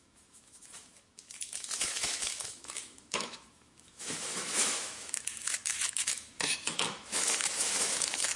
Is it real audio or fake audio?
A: fake